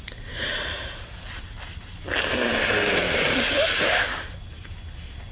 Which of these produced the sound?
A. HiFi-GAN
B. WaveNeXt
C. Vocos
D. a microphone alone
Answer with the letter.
D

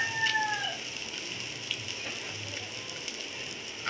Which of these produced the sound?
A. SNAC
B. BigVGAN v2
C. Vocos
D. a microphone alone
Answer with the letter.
D